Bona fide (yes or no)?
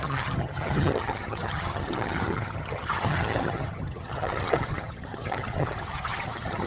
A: no